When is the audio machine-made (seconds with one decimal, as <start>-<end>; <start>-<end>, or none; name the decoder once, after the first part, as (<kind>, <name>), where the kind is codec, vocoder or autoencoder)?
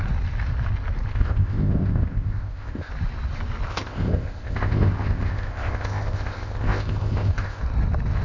1.1-2.9 (codec, ZipCodec); 3.7-7.6